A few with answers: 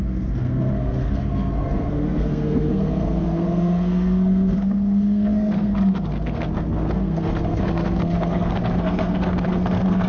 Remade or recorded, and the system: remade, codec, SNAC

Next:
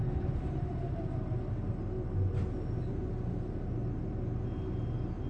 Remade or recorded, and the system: recorded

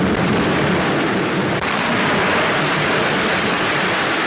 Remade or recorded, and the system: recorded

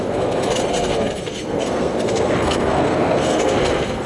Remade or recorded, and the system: remade, codec, SNAC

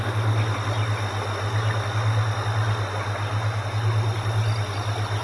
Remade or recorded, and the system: recorded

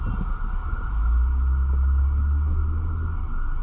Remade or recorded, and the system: recorded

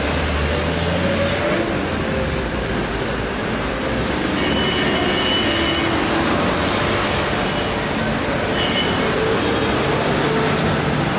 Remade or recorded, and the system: recorded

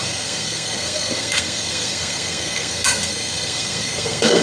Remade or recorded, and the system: remade, codec, SNAC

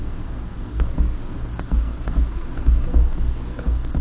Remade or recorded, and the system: remade, codec, SNAC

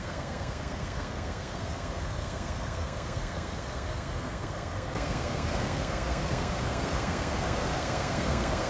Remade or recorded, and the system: remade, codec, SNAC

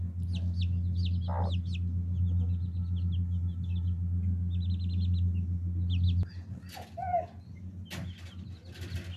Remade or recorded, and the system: recorded